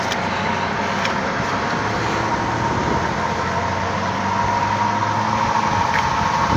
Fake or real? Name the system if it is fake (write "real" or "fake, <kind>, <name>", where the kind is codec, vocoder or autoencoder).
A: real